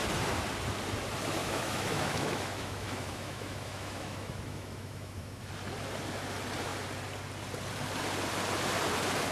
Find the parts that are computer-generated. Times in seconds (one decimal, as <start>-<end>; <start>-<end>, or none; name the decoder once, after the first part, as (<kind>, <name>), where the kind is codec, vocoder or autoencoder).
1.4-5.4 (autoencoder, DAC-VAE)